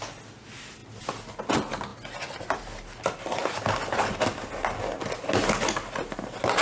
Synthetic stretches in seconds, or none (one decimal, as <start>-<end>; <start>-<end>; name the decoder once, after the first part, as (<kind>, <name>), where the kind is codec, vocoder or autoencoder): none